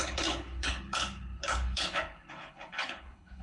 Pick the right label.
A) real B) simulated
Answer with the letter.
B